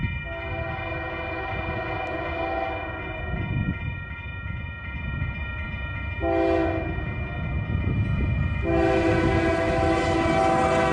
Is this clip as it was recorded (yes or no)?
yes